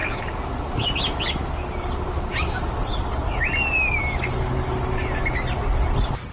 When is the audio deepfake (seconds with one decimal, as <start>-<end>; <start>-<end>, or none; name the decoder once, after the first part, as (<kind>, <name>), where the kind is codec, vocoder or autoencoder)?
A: none

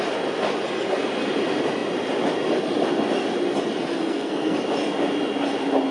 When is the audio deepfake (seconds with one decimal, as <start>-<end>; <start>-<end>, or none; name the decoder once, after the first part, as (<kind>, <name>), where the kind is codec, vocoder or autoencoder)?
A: 3.9-4.6 (codec, SNAC)

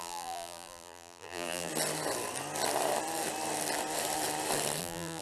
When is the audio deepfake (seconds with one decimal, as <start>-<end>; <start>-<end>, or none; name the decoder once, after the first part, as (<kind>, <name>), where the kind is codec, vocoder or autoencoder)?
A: 0.0-1.7 (vocoder, BigVGAN v2); 4.8-5.2

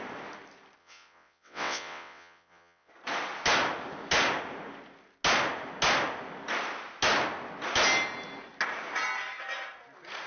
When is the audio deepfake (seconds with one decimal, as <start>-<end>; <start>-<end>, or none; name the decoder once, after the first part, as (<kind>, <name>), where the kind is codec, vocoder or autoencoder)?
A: 0.8-2.9 (vocoder, WaveNeXt)

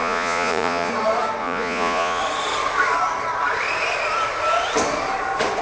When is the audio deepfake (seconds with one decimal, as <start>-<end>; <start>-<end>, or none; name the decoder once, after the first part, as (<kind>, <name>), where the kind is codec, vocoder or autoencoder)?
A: 0.0-0.9 (vocoder, Vocos); 1.4-2.2

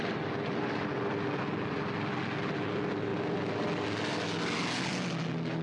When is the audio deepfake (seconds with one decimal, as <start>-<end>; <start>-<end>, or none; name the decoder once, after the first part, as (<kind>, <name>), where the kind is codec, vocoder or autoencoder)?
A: none

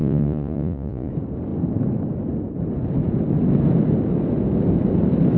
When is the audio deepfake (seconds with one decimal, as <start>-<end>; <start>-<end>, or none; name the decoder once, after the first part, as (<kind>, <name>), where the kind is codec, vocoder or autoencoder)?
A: 0.0-1.1 (vocoder, Vocos)